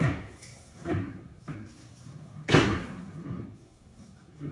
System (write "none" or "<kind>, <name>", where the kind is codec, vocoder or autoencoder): codec, SNAC